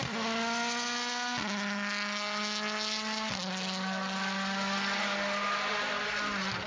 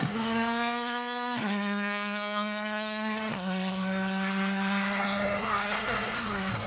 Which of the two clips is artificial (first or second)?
second